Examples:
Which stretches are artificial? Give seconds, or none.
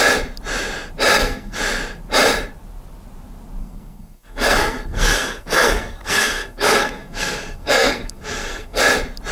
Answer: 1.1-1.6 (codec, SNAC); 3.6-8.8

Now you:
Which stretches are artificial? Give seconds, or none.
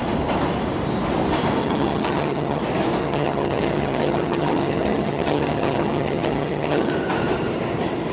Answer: 1.6-2.6 (vocoder, HiFi-GAN); 3.0-6.9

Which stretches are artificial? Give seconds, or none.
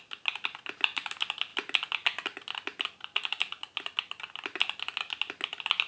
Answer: none